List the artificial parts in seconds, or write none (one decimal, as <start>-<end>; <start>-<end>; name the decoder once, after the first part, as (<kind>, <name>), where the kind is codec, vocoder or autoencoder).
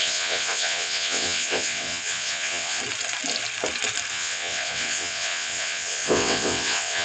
0.0-2.8 (vocoder, WaveNeXt); 4.1-7.0